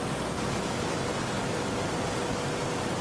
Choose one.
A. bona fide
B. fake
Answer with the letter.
A